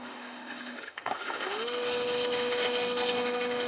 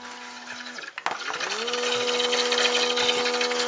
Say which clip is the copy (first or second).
first